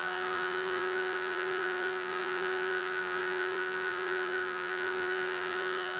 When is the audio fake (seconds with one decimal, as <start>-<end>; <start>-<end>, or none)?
0.0-6.0